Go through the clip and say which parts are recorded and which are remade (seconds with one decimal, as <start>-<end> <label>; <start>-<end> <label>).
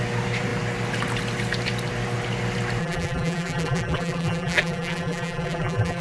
0.0-2.8 recorded; 2.8-6.0 remade